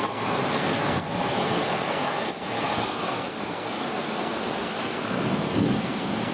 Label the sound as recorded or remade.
remade